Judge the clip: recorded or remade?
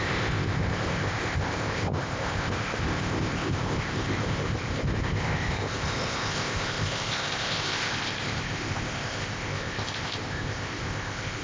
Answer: remade